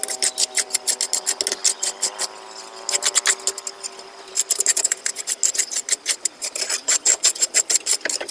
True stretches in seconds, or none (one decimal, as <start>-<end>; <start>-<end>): 0.0-4.7; 5.3-6.8; 7.5-8.3